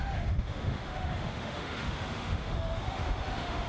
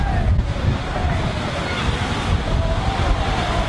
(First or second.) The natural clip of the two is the second